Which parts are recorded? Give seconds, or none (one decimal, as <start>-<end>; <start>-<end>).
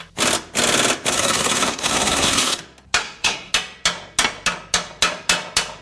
0.0-1.1; 2.6-3.0; 3.5-5.8